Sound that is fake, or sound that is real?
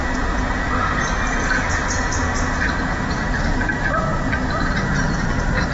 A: real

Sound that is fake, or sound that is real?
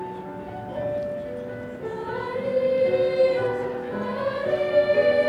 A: real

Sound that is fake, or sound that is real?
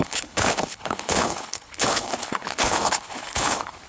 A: fake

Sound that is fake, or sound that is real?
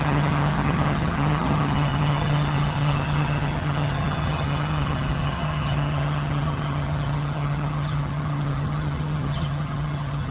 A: fake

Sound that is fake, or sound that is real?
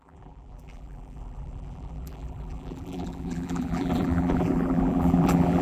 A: fake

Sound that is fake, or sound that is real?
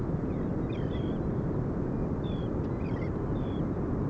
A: real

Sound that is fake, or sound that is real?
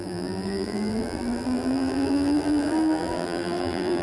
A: fake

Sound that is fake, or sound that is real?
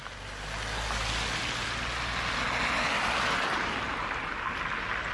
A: real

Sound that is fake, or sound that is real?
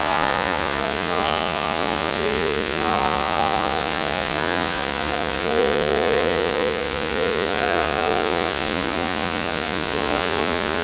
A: fake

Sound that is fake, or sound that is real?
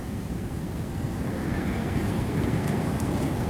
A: fake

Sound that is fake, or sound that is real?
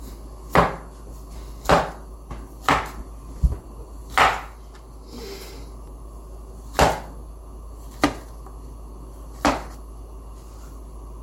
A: real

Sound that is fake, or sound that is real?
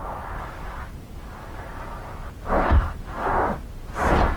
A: real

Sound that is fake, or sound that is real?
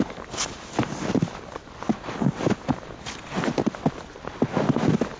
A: real